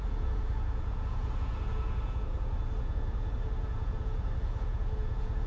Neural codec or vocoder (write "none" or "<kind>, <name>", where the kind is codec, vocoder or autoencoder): vocoder, Vocos